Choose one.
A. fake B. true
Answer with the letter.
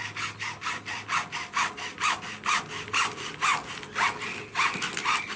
B